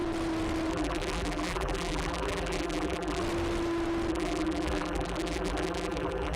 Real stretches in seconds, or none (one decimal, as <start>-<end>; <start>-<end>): 0.0-0.7; 3.2-4.1

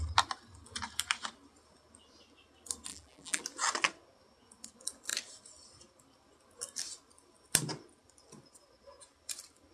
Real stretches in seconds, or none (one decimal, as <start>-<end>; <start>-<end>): 0.0-2.9; 3.4-9.7

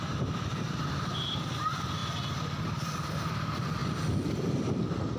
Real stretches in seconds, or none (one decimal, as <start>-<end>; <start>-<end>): 1.6-5.2

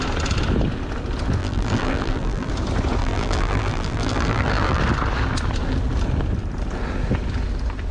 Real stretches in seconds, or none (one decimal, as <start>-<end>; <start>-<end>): 0.0-1.4; 2.5-3.0; 4.8-7.9

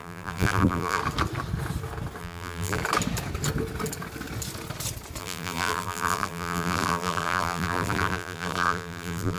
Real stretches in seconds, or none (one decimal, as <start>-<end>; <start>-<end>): 1.0-2.2; 2.8-5.2